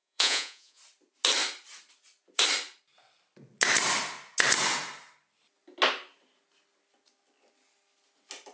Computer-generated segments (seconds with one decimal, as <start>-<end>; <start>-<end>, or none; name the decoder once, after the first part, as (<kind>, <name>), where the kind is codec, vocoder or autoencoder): 0.0-0.8 (vocoder, Vocos)